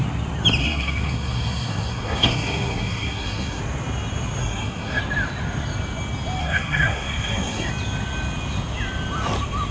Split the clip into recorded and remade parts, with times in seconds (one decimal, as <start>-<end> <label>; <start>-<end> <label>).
0.0-0.6 recorded; 0.6-3.6 remade; 3.6-4.4 recorded; 4.4-5.0 remade; 5.0-6.4 recorded; 6.4-7.7 remade; 7.7-9.7 recorded